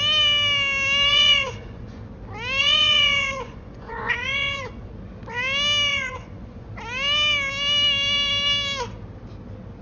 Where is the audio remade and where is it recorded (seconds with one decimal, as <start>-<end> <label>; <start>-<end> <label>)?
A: 0.0-1.1 recorded; 1.1-2.0 remade; 2.0-2.6 recorded; 2.6-4.9 remade; 4.9-5.9 recorded; 5.9-6.7 remade; 6.7-9.8 recorded

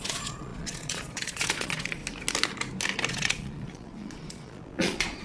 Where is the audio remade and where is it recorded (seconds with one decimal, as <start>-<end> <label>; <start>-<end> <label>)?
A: 0.0-2.0 remade; 2.0-3.1 recorded; 3.1-5.2 remade

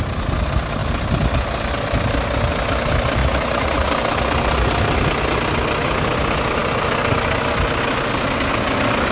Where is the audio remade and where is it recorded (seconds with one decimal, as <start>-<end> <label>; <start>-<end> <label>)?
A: 0.0-3.2 recorded; 3.2-3.9 remade; 3.9-9.1 recorded

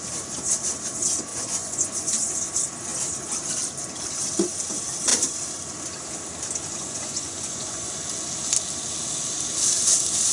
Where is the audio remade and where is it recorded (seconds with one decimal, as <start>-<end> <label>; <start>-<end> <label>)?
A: 0.0-1.3 recorded; 1.3-2.3 remade; 2.3-6.7 recorded; 6.7-7.9 remade; 7.9-10.3 recorded

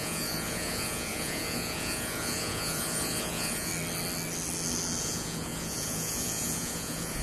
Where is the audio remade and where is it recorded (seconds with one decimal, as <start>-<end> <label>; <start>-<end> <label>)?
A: 0.0-3.7 remade; 3.7-5.0 recorded; 5.0-7.2 remade

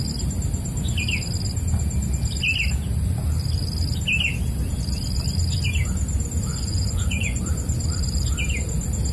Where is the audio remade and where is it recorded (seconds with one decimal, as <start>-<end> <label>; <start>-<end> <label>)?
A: 0.0-6.5 recorded; 6.5-7.4 remade; 7.4-9.1 recorded